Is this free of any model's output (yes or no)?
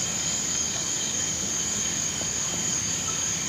no